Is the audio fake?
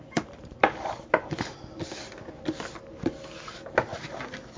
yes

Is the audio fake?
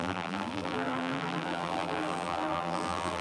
yes